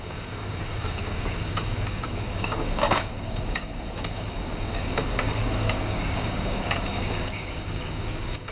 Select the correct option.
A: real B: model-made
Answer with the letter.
B